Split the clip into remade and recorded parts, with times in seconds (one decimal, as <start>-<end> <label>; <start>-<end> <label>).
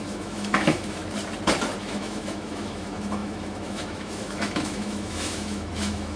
0.0-1.0 remade; 1.0-1.8 recorded; 1.8-6.2 remade